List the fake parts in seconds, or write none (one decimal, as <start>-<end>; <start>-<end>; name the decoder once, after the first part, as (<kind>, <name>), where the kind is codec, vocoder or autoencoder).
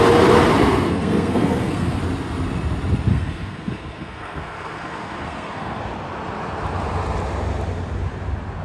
0.6-2.0 (codec, SNAC); 3.1-5.8